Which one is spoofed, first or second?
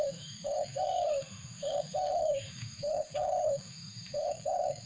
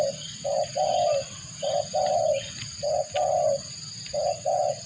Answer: first